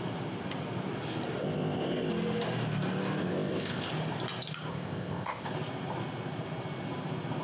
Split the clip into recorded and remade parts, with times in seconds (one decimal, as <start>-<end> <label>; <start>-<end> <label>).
0.0-1.4 recorded; 1.4-2.1 remade; 2.1-3.2 recorded; 3.2-3.9 remade; 3.9-4.7 recorded; 4.7-5.5 remade; 5.5-7.4 recorded